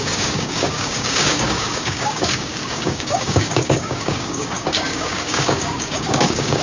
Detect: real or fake fake